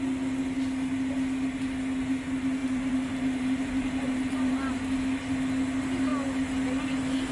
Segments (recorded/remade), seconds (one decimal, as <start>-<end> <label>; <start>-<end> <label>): 0.0-2.6 recorded; 2.6-4.7 remade; 4.7-7.3 recorded